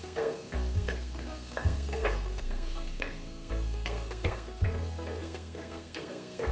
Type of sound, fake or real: fake